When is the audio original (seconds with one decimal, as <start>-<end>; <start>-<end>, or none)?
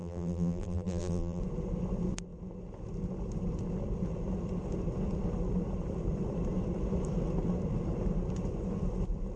1.4-9.4